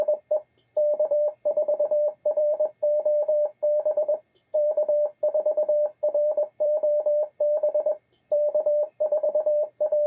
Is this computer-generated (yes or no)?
yes